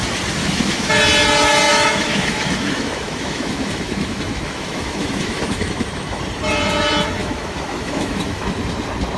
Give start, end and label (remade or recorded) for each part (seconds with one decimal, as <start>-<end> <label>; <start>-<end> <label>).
0.0-0.4 recorded; 0.4-0.9 remade; 0.9-1.7 recorded; 1.7-6.2 remade; 6.2-7.2 recorded; 7.2-8.5 remade; 8.5-9.2 recorded